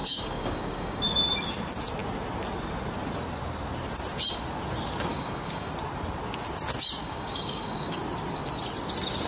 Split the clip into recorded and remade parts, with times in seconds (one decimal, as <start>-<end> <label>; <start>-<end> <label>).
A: 0.0-1.0 remade; 1.0-5.1 recorded; 5.1-5.7 remade; 5.7-7.0 recorded; 7.0-8.0 remade; 8.0-9.3 recorded